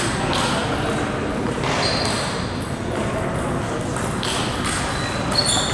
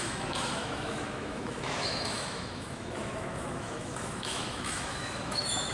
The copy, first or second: second